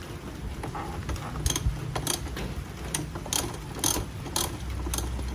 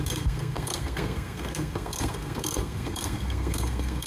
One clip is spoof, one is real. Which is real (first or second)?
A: first